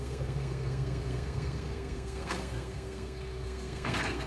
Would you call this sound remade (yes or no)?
yes